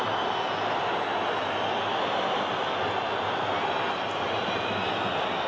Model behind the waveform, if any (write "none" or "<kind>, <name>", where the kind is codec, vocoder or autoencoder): none